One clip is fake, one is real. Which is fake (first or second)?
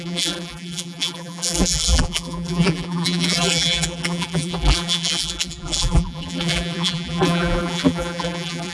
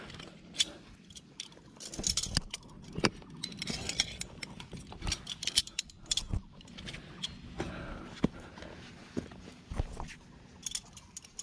first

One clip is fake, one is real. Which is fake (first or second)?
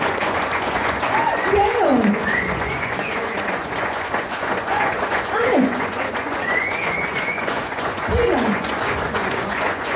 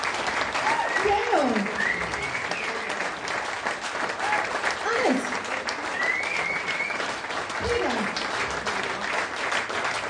first